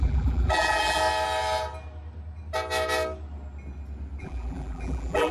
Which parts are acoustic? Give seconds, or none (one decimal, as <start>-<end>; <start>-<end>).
1.0-4.2

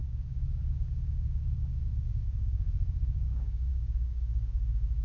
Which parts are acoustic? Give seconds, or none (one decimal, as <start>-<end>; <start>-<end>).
none

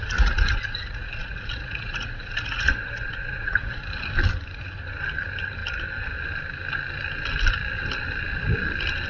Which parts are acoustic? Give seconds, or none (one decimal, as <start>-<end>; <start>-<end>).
3.8-9.1

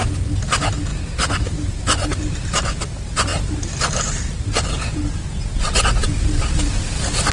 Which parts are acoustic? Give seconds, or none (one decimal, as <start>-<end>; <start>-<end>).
0.0-7.3

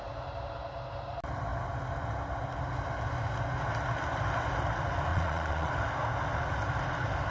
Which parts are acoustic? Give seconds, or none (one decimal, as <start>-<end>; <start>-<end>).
0.0-5.1; 5.7-7.3